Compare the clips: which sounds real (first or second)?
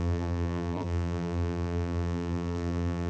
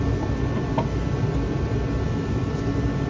second